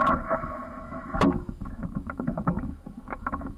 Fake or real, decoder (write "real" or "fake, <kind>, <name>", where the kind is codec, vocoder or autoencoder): fake, autoencoder, DAC-VAE